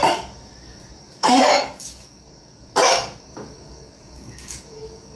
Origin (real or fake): fake